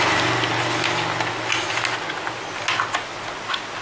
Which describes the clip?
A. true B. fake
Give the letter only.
A